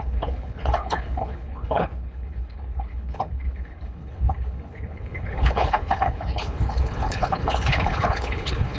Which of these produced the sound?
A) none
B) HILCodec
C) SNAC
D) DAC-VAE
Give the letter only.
B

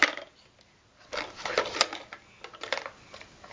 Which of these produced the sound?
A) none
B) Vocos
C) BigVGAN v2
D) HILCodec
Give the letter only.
A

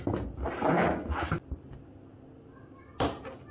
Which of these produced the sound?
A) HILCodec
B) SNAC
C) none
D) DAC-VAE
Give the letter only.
C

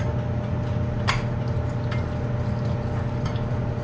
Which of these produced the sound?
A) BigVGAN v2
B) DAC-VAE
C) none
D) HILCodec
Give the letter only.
C